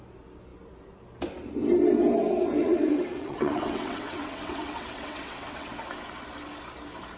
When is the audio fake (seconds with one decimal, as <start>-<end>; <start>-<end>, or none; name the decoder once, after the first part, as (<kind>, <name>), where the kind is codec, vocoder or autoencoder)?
2.6-5.7 (vocoder, WaveNeXt)